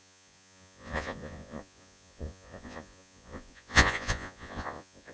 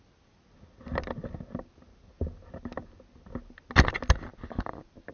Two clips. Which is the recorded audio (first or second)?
second